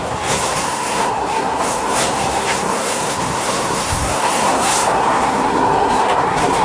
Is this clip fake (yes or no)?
yes